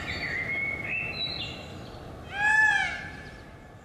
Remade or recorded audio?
recorded